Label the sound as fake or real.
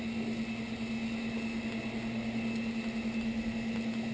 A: real